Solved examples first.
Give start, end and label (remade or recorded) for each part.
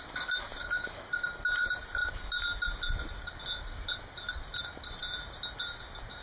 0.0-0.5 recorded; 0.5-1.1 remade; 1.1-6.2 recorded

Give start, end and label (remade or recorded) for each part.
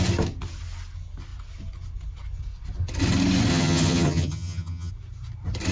0.0-3.5 recorded; 3.5-4.9 remade; 4.9-5.7 recorded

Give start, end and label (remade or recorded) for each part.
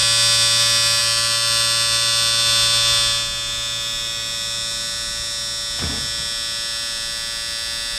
0.0-8.0 recorded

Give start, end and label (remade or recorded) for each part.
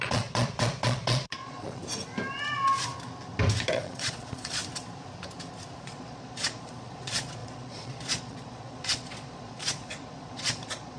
0.0-1.8 remade; 1.8-3.7 recorded; 3.7-4.6 remade; 4.6-5.8 recorded; 5.8-11.0 remade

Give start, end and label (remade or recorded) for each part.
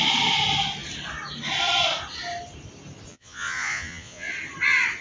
0.0-3.1 recorded; 3.1-4.3 remade; 4.3-5.0 recorded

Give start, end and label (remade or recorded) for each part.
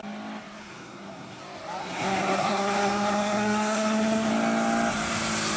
0.0-0.6 recorded; 0.6-1.4 remade; 1.4-1.8 recorded; 1.8-4.3 remade; 4.3-5.6 recorded